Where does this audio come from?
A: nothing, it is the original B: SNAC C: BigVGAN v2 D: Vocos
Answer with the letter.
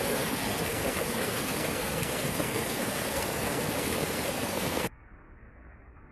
B